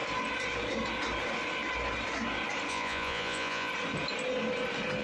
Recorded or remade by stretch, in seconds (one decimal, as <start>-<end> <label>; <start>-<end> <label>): 0.0-2.7 recorded; 2.7-3.7 remade; 3.7-5.0 recorded